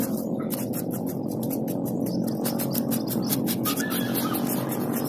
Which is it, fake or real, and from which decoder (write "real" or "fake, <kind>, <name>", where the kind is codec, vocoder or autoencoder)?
real